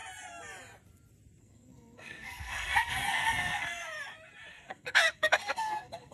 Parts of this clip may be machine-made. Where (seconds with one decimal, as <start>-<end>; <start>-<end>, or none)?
1.4-3.8; 4.5-6.1